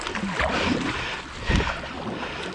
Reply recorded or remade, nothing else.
recorded